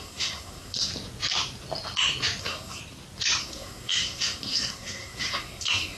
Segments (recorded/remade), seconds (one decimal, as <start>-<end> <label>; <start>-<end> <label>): 0.0-0.9 remade; 0.9-2.4 recorded; 2.4-2.8 remade; 2.8-3.4 recorded; 3.4-6.0 remade